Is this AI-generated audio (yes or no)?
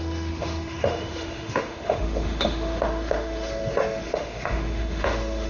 yes